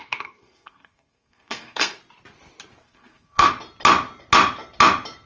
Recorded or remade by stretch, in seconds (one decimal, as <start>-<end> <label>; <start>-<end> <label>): 0.0-2.0 remade; 2.0-2.8 recorded; 2.8-3.5 remade; 3.5-5.3 recorded